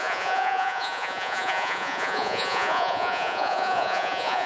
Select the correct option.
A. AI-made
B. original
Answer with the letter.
A